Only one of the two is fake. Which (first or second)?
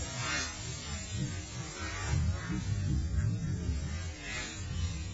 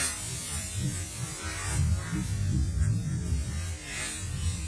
second